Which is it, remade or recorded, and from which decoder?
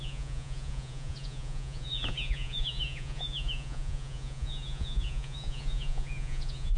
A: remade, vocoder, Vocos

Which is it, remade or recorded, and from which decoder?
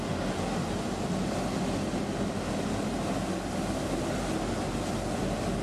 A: recorded